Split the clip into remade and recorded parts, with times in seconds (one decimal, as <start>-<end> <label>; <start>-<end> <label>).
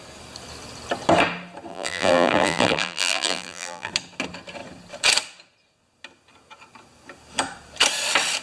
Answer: 0.0-1.7 recorded; 1.7-3.9 remade; 3.9-8.4 recorded